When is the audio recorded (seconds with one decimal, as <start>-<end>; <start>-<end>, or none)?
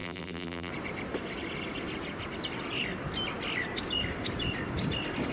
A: 0.7-5.3